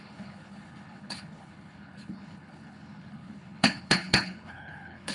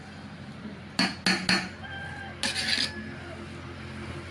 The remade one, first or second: first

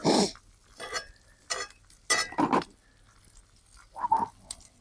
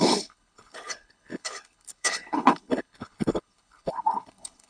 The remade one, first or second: second